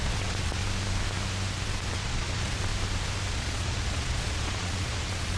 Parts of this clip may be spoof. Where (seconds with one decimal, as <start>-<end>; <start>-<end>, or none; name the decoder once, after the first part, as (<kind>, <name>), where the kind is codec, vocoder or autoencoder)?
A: 0.0-0.6 (vocoder, Vocos); 1.9-2.7; 3.3-5.4